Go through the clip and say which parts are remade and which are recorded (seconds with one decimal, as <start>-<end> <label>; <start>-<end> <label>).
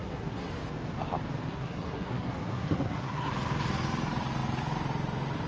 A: 0.0-0.5 remade; 0.5-1.5 recorded; 1.5-3.3 remade; 3.3-5.5 recorded